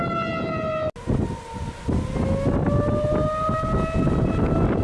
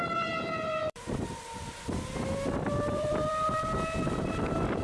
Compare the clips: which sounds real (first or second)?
first